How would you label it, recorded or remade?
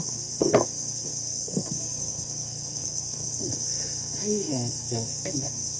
remade